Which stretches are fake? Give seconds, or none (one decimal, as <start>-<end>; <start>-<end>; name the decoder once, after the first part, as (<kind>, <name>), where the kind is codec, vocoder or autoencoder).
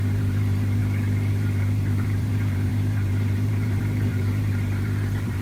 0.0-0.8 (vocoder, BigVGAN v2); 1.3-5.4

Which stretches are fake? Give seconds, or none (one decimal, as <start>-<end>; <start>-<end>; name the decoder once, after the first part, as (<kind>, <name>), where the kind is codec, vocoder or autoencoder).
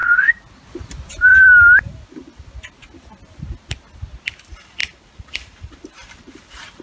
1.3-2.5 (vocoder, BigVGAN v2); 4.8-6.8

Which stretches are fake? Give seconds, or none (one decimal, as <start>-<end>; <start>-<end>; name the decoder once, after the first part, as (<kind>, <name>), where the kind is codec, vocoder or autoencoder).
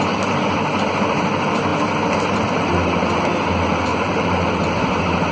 3.9-4.5 (vocoder, BigVGAN v2)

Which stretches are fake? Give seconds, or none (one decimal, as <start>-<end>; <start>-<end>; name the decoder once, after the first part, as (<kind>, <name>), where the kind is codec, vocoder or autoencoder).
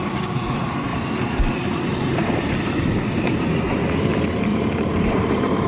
0.9-3.9 (vocoder, BigVGAN v2); 4.5-5.7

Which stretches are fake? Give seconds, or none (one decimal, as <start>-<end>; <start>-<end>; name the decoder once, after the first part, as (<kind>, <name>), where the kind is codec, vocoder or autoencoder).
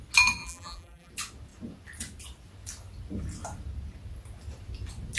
0.4-1.1 (vocoder, BigVGAN v2)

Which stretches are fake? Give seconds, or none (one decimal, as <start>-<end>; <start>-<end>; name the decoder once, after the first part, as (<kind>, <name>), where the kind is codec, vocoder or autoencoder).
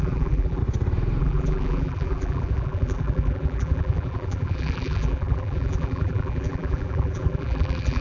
0.0-0.6 (vocoder, BigVGAN v2); 1.2-8.0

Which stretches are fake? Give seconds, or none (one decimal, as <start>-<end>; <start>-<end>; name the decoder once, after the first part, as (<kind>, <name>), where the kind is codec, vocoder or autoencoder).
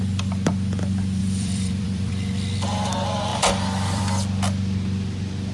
1.2-2.1 (vocoder, BigVGAN v2); 3.3-4.0